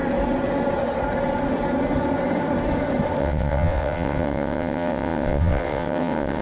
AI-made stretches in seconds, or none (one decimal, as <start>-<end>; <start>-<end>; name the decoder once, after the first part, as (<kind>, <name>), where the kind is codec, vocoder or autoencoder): 3.2-6.4 (vocoder, WaveNeXt)